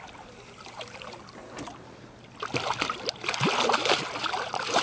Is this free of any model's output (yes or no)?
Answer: yes